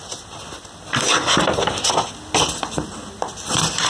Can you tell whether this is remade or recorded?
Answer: recorded